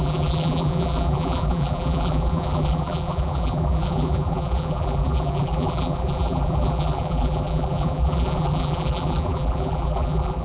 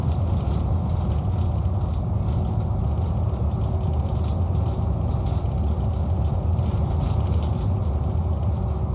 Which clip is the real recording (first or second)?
second